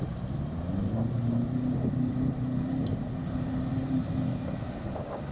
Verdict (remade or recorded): recorded